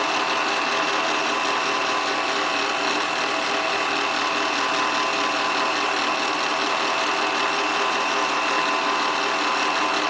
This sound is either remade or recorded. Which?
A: recorded